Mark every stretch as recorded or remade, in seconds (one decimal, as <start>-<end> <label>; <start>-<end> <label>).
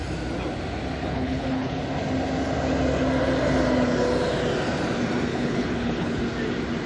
0.0-1.0 recorded; 1.0-1.8 remade; 1.8-5.3 recorded; 5.3-6.2 remade; 6.2-6.9 recorded